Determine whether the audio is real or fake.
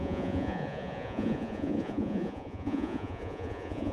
fake